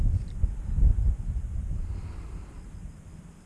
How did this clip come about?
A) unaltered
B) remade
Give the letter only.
A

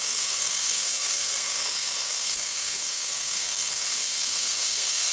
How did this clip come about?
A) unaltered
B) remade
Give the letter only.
B